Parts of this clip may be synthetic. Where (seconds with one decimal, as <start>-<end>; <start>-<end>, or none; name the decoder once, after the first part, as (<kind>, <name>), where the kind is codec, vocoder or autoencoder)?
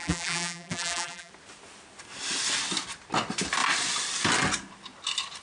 0.0-1.3 (vocoder, BigVGAN v2)